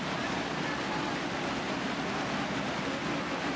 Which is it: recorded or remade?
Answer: recorded